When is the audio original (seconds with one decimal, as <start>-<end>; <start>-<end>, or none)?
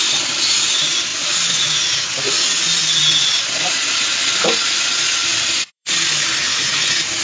0.0-5.2; 6.3-7.2